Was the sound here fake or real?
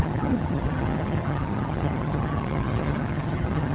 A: fake